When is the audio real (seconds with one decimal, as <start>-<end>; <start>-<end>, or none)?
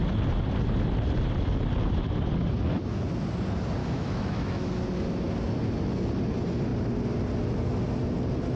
0.0-3.8; 4.7-8.6